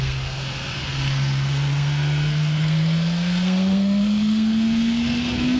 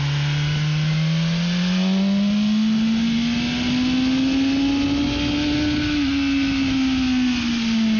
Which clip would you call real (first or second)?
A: second